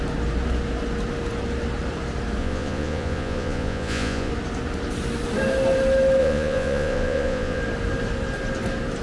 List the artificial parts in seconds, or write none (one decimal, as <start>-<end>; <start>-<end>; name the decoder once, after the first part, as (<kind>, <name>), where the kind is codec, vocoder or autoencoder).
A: 2.4-4.3 (vocoder, Vocos); 6.2-7.6